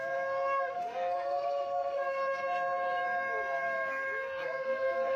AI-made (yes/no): yes